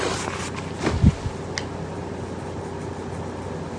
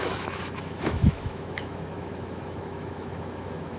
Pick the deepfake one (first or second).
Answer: second